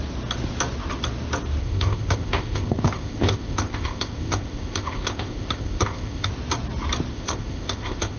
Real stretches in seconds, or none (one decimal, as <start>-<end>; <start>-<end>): 0.0-1.6; 6.3-7.1